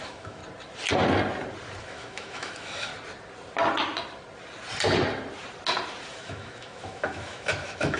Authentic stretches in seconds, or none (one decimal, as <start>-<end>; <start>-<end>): 0.4-1.8; 2.9-6.1